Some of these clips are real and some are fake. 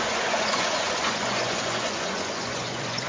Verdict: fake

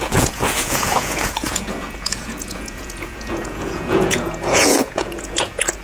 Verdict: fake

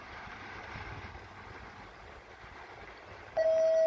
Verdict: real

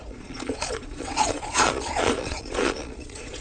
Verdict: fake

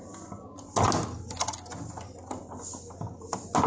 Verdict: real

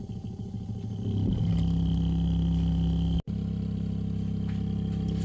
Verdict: real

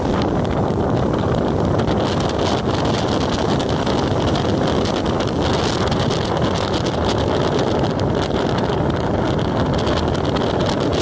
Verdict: real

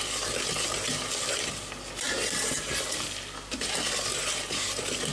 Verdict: real